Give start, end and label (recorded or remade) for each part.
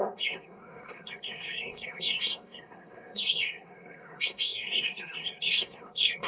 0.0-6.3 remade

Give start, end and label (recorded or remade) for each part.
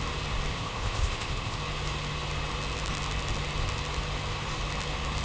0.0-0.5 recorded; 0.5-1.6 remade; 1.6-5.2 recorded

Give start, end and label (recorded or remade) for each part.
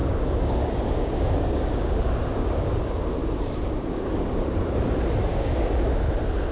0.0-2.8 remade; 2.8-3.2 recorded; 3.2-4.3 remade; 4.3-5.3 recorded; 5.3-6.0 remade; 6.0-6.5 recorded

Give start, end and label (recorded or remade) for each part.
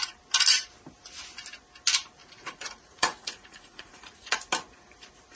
0.0-2.2 recorded; 2.2-4.4 remade; 4.4-5.4 recorded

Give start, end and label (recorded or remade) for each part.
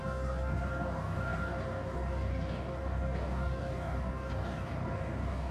0.0-5.5 remade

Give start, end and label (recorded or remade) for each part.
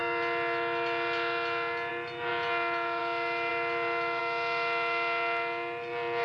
0.0-6.2 recorded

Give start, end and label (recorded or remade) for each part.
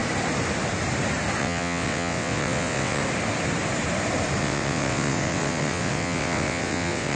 0.0-1.4 recorded; 1.4-3.0 remade; 3.0-4.4 recorded; 4.4-7.2 remade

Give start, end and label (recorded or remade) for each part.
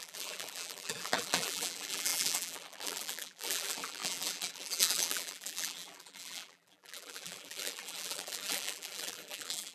0.0-9.7 remade